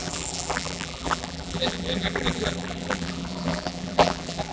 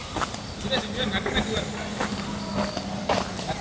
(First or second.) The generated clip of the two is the first